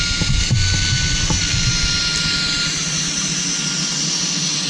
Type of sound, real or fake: real